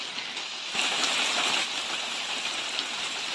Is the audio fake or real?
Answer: real